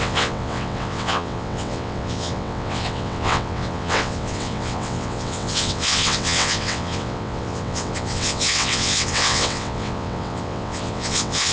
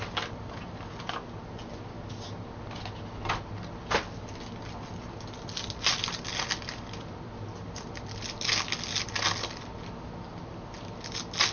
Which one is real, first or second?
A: second